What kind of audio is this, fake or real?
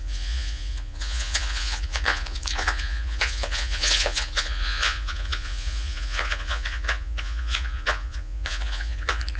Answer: fake